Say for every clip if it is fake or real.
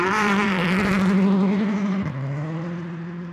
fake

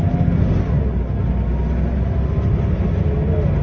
real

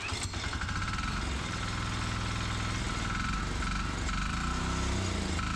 real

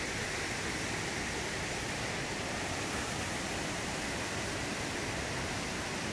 real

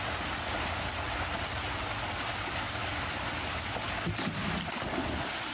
real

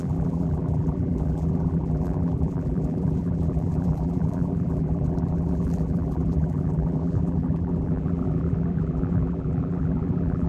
fake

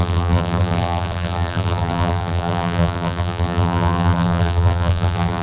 fake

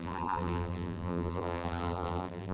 fake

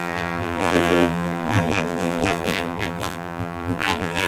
fake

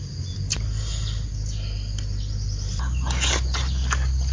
real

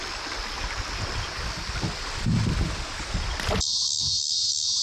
real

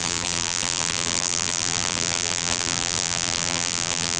fake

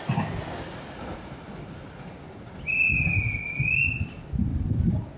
real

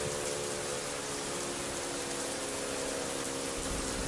real